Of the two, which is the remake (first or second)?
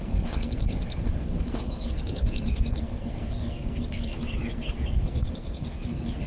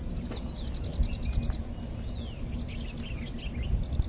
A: first